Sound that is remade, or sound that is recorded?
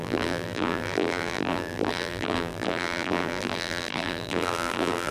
remade